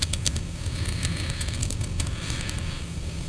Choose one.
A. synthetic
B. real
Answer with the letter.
A